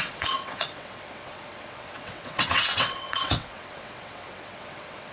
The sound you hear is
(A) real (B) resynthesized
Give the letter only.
B